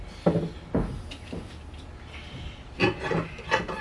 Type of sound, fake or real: real